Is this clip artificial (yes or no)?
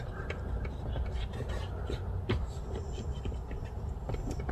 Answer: no